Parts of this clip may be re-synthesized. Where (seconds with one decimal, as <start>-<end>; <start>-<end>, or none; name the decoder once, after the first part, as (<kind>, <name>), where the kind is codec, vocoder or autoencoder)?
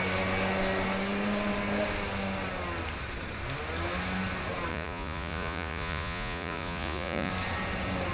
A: 4.7-7.3 (vocoder, Vocos)